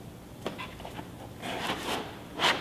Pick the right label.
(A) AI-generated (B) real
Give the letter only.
B